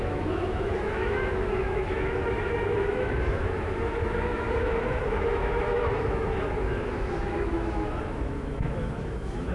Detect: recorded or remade remade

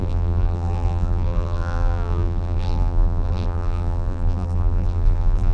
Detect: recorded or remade remade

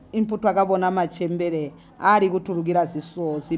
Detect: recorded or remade recorded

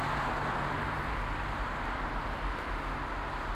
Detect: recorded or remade recorded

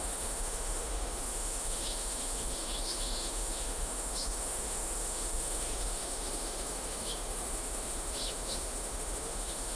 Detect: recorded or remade remade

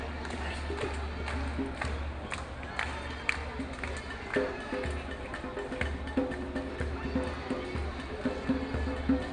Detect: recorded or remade recorded